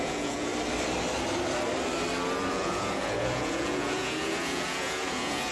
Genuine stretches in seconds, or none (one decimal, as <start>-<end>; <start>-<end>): 0.5-2.5